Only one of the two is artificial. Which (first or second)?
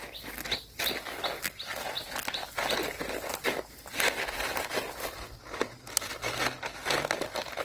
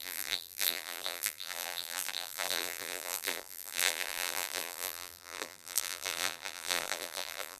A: second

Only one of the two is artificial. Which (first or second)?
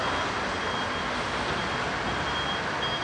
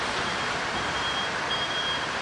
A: second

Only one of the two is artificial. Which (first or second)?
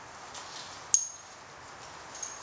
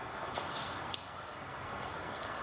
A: second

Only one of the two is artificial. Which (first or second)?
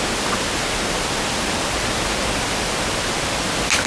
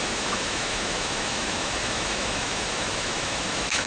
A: second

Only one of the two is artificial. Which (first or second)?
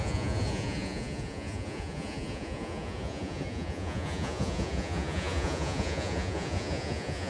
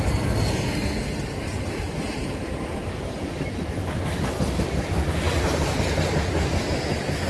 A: first